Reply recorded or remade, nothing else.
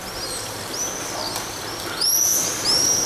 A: recorded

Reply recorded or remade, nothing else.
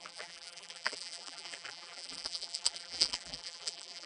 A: remade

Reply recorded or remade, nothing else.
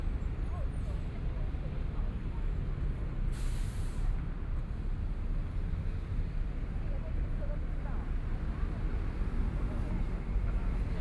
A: recorded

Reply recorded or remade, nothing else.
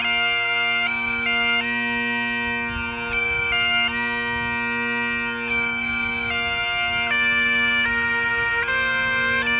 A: recorded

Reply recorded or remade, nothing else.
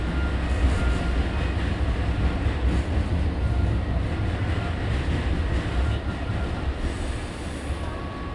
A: recorded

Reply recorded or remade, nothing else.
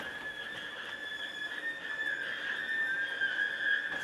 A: recorded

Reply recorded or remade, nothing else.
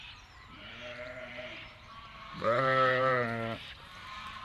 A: remade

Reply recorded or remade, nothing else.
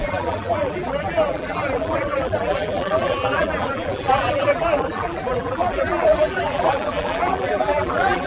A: remade